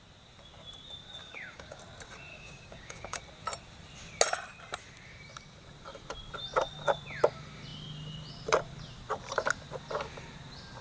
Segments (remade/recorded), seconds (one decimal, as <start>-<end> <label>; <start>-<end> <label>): 0.0-1.2 recorded; 1.2-1.8 remade; 1.8-2.3 recorded; 2.3-3.2 remade; 3.2-10.8 recorded